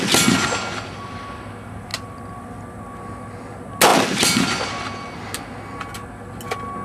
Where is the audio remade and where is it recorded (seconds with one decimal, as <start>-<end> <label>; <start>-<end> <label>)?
0.0-6.8 recorded

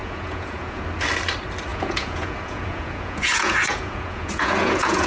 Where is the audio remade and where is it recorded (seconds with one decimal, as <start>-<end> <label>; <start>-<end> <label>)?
0.0-0.8 remade; 0.8-1.7 recorded; 1.7-5.1 remade